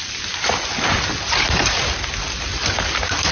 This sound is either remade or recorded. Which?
recorded